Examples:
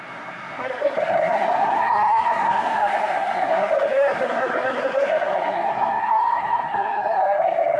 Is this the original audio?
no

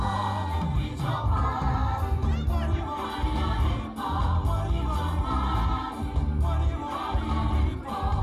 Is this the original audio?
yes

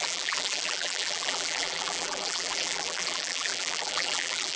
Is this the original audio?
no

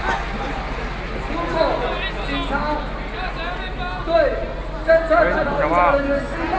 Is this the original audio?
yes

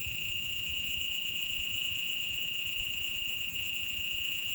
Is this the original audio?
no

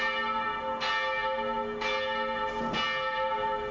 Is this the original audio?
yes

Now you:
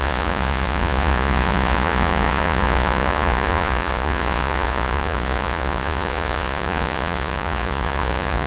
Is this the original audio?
no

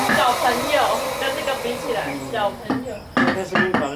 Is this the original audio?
yes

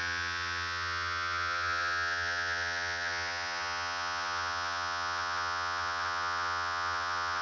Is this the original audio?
no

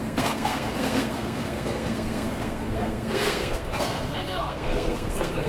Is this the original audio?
no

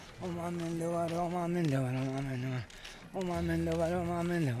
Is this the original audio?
yes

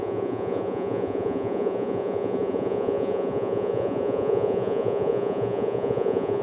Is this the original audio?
no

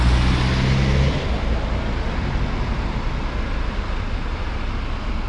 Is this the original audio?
yes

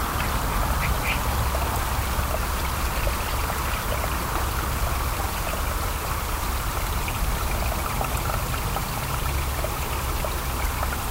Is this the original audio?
yes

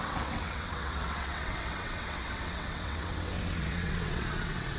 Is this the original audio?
no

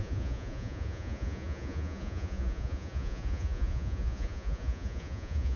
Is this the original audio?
no